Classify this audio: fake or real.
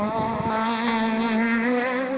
real